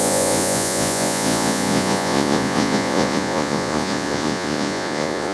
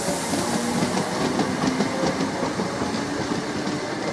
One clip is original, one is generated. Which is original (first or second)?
second